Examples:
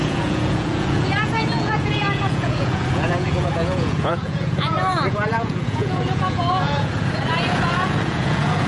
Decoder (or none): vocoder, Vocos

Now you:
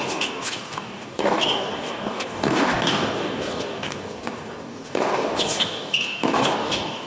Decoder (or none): codec, DAC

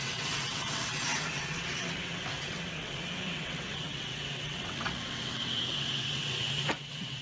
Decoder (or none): vocoder, WaveNeXt